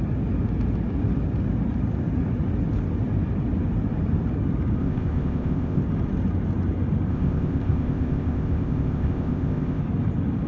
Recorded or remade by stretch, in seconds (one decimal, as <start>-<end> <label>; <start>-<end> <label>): 0.0-4.8 recorded; 4.8-5.8 remade; 5.8-7.1 recorded; 7.1-9.8 remade; 9.8-10.5 recorded